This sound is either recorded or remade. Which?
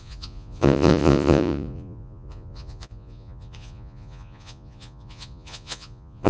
remade